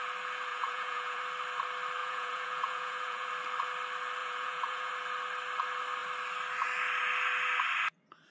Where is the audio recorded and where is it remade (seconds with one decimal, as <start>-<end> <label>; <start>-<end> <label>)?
0.0-0.5 recorded; 0.5-1.2 remade; 1.2-2.0 recorded; 2.0-3.3 remade; 3.3-4.2 recorded; 4.2-4.9 remade; 4.9-8.3 recorded